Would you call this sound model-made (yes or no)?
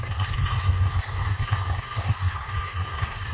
yes